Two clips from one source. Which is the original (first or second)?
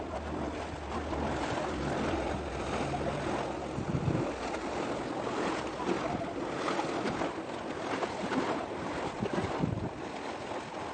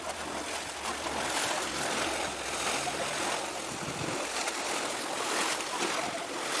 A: first